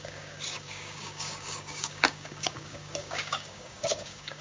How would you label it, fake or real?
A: fake